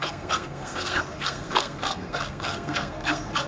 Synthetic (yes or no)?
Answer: yes